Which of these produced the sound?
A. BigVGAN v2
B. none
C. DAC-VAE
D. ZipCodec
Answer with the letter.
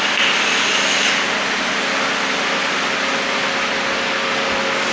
B